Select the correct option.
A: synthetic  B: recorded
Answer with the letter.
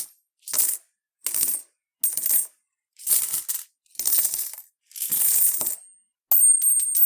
B